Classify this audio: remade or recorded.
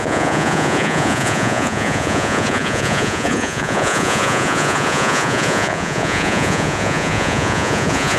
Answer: remade